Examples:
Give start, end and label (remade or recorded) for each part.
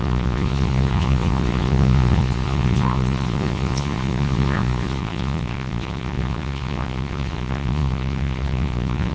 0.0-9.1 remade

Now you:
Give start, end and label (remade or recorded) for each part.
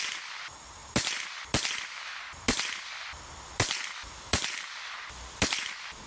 0.0-6.1 recorded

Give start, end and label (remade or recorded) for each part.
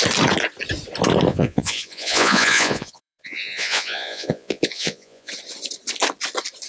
0.0-1.3 recorded; 1.3-5.3 remade; 5.3-6.7 recorded